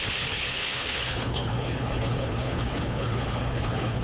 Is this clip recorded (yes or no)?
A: no